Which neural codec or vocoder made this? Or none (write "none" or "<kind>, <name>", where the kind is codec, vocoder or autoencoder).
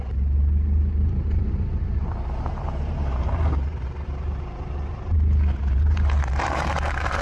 vocoder, BigVGAN v2